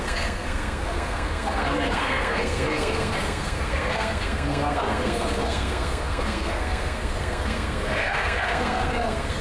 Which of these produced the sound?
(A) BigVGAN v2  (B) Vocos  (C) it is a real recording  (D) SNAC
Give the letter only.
D